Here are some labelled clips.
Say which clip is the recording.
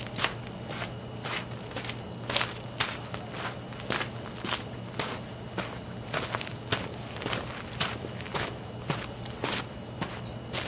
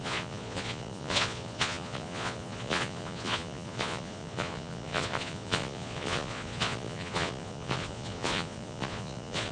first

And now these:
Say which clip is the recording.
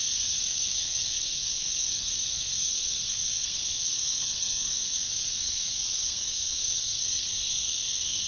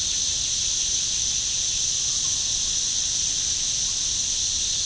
second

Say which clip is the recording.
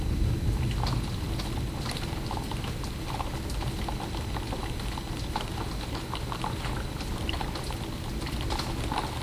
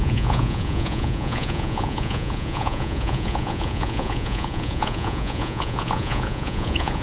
first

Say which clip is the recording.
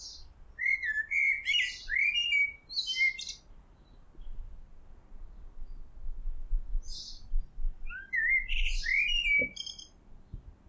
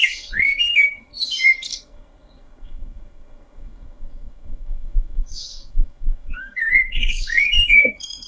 first